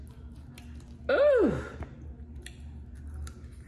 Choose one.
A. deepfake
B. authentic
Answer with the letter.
B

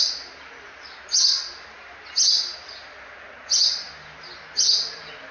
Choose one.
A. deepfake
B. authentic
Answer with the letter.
B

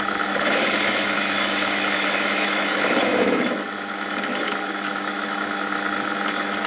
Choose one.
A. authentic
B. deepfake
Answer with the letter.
B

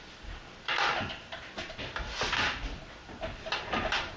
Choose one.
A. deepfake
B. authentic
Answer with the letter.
A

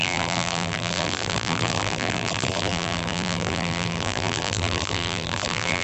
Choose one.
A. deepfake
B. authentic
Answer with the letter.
A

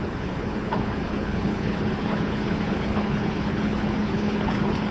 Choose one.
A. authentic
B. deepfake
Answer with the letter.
B